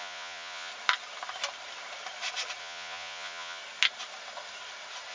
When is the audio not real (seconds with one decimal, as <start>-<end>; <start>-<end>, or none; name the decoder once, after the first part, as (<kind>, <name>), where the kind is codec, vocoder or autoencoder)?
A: 0.0-0.7 (vocoder, Vocos); 2.6-3.6